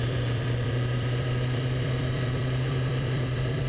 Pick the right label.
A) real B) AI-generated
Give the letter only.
B